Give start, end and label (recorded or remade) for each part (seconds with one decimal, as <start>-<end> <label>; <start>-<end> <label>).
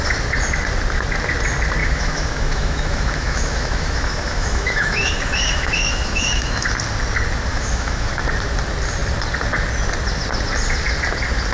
0.0-1.8 recorded; 1.8-6.7 remade; 6.7-7.5 recorded; 7.5-8.1 remade; 8.1-11.5 recorded